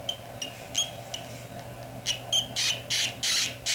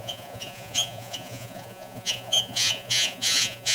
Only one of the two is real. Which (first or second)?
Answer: first